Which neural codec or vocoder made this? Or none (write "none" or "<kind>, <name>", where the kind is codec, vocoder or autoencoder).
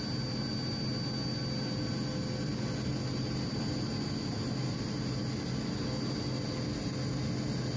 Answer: none